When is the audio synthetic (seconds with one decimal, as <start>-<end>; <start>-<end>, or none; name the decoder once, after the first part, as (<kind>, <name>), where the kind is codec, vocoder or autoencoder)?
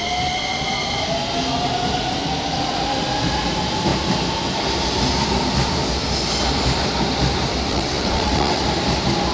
7.7-8.6 (vocoder, WaveNeXt)